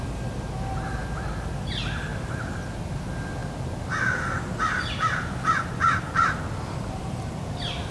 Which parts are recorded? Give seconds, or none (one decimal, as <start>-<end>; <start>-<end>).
0.0-7.9